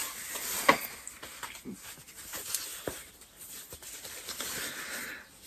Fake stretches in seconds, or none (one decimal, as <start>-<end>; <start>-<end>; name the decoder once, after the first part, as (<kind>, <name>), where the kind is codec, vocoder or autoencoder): 2.7-4.4 (vocoder, BigVGAN v2)